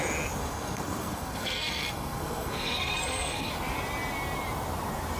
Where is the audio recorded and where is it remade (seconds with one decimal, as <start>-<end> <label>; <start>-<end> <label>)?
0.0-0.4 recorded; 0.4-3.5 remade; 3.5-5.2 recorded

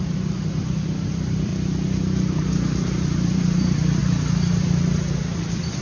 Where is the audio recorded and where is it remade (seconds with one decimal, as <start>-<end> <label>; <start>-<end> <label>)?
0.0-1.5 remade; 1.5-3.0 recorded; 3.0-4.0 remade; 4.0-5.1 recorded; 5.1-5.8 remade

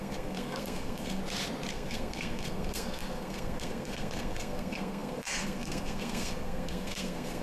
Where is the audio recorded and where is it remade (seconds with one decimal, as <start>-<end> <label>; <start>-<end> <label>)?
0.0-1.2 remade; 1.2-1.7 recorded; 1.7-7.4 remade

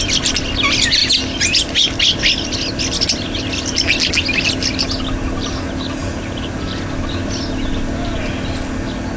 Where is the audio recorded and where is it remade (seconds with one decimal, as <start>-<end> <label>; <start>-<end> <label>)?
0.0-6.0 recorded; 6.0-8.2 remade; 8.2-9.2 recorded

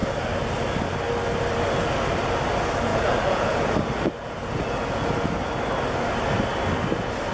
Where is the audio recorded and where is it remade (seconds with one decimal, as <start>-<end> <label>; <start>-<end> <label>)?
0.0-2.9 recorded; 2.9-3.6 remade; 3.6-4.2 recorded; 4.2-5.1 remade; 5.1-7.3 recorded

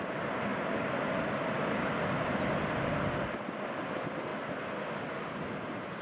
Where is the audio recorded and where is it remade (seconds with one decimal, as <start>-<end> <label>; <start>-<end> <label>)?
0.0-6.0 recorded